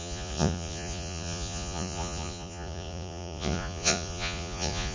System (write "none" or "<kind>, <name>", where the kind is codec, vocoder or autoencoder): vocoder, Vocos